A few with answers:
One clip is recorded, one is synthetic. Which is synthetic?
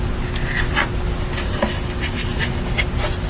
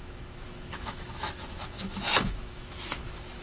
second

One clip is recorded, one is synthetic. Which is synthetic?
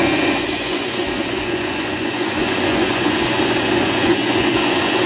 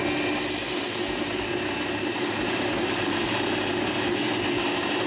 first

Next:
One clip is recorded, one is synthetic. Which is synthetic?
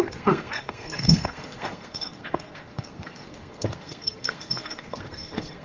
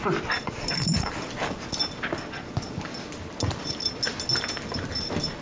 first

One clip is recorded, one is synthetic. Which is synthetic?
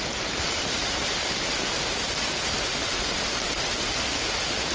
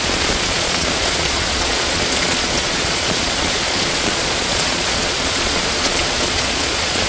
second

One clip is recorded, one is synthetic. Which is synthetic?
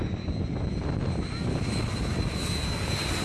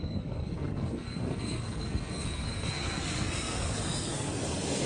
second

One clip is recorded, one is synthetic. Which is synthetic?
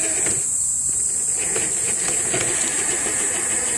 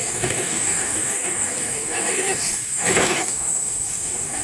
second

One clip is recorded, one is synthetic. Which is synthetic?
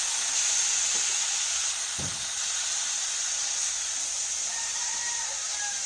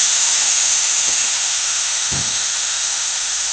second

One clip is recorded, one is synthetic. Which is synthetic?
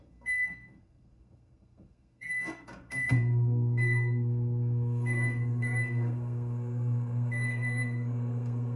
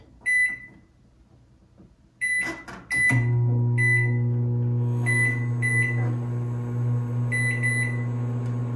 first